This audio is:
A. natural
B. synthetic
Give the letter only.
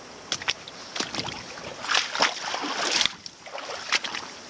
A